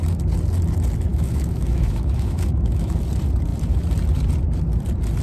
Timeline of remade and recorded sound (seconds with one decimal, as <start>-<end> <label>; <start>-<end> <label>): 0.0-1.1 recorded; 1.1-3.0 remade; 3.0-5.2 recorded